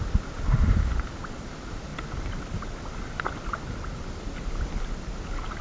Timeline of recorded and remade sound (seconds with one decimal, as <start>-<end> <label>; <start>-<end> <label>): 0.0-5.6 recorded